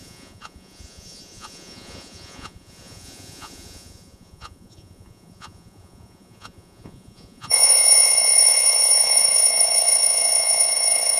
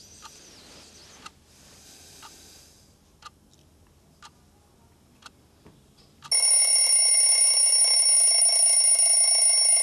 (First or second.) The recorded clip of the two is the second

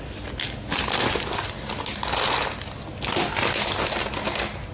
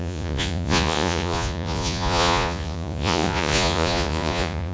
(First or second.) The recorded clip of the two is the first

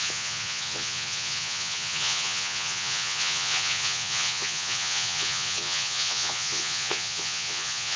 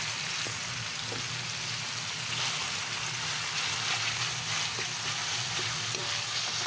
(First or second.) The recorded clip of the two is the second